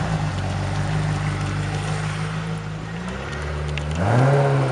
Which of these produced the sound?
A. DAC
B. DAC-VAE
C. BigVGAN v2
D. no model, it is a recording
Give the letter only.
D